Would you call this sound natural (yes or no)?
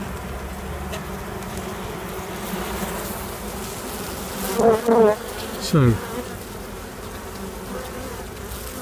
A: yes